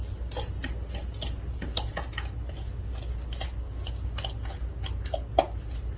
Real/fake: real